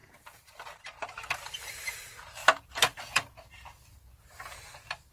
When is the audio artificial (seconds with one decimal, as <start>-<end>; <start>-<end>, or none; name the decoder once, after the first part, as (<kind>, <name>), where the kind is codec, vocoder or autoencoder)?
0.0-2.4 (vocoder, BigVGAN v2)